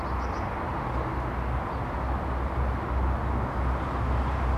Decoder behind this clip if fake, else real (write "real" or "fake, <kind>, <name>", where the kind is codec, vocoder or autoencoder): real